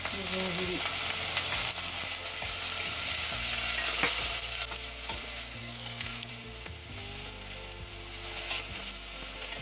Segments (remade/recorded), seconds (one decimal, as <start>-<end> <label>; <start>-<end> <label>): 0.0-5.6 recorded; 5.6-6.3 remade; 6.3-9.6 recorded